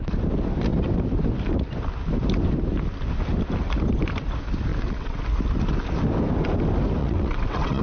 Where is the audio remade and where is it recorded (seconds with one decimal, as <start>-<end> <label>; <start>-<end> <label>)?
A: 0.0-4.7 recorded; 4.7-5.2 remade; 5.2-7.0 recorded; 7.0-7.8 remade